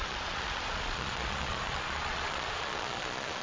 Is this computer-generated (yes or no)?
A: yes